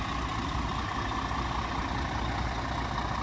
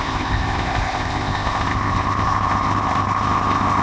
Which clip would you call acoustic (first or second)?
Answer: first